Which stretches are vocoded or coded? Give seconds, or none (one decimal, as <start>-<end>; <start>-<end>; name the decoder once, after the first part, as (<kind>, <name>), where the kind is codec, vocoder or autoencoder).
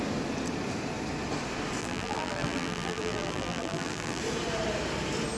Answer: 1.8-4.2 (vocoder, BigVGAN v2)